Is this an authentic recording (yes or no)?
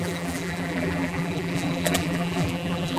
no